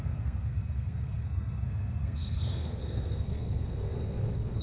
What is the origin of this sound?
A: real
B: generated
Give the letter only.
B